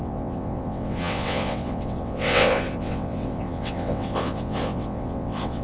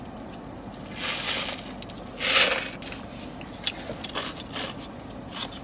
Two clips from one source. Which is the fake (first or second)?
first